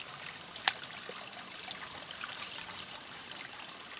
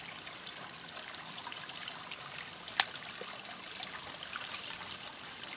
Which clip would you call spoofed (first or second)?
first